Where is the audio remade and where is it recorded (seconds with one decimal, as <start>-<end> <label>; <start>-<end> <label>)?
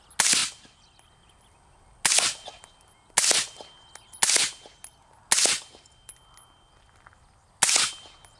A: 0.0-8.4 recorded